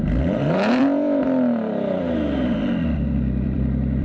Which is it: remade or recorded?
remade